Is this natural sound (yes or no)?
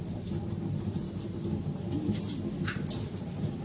yes